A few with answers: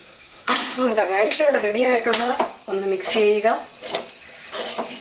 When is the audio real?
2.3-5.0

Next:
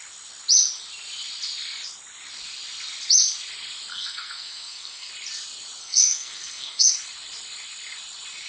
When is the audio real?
0.0-3.9; 5.1-5.8; 6.9-8.5

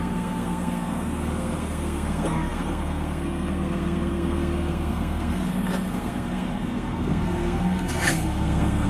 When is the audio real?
none

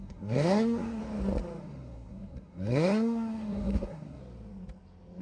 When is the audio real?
1.0-1.6; 4.2-5.2

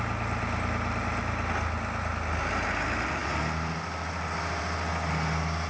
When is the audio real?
0.0-5.7